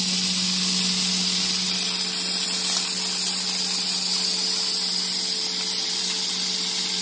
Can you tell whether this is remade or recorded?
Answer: recorded